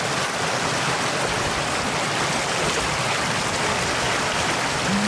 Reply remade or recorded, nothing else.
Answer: recorded